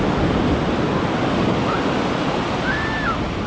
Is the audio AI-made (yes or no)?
no